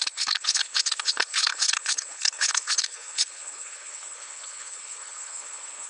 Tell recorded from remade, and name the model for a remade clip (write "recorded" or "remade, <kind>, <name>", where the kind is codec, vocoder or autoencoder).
remade, codec, HILCodec